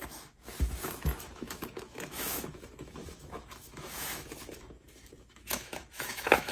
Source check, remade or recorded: remade